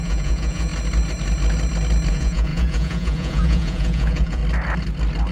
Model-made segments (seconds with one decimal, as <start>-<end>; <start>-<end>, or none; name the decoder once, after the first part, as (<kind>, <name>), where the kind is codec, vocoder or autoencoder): 0.0-0.7 (vocoder, Vocos); 2.1-4.4